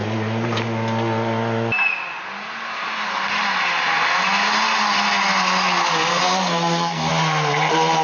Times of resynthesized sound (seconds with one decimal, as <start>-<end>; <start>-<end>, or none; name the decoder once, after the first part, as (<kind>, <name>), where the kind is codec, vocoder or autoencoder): 6.1-7.1 (codec, SNAC)